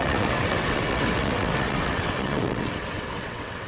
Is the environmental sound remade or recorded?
remade